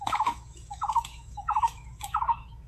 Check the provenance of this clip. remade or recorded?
remade